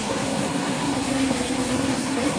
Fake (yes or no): yes